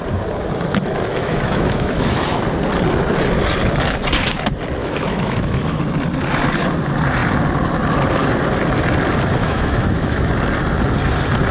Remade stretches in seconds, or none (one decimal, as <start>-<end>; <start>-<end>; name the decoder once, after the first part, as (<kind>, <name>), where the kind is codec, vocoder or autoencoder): 1.1-2.4 (autoencoder, DAC-VAE); 4.8-5.8; 9.4-10.3